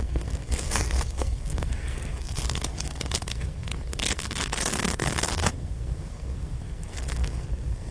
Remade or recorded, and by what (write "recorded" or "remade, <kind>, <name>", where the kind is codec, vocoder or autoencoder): remade, codec, SNAC